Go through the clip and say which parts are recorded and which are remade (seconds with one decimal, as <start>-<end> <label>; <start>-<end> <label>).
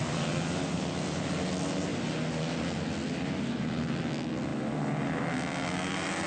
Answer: 0.0-6.3 recorded